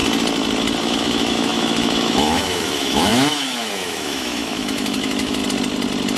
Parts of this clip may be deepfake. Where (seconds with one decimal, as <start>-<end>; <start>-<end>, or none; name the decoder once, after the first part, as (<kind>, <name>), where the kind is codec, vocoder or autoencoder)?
0.8-5.4 (autoencoder, DAC-VAE)